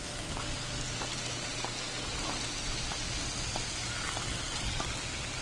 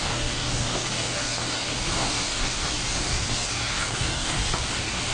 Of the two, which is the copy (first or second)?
second